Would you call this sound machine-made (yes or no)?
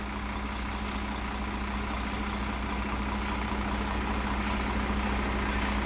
no